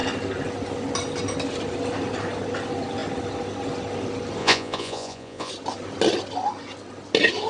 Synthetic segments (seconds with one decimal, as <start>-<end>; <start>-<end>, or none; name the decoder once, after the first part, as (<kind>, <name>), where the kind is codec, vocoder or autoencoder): 4.4-5.5 (vocoder, Vocos)